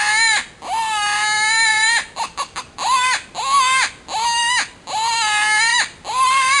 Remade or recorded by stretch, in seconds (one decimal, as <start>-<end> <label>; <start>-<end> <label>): 0.0-1.7 recorded; 1.7-2.6 remade; 2.6-5.7 recorded; 5.7-6.6 remade